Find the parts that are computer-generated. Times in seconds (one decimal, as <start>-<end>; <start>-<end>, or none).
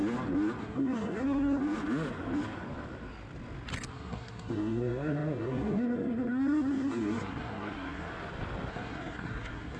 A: 0.6-1.6; 3.9-8.1; 8.7-9.8